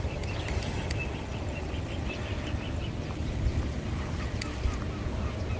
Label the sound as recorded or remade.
recorded